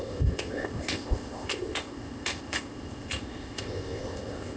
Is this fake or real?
fake